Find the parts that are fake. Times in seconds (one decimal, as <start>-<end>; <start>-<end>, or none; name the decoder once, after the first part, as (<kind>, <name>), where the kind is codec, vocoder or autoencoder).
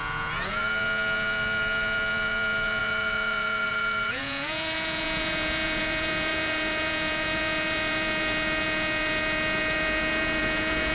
0.0-10.9 (vocoder, Vocos)